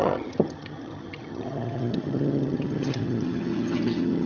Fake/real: fake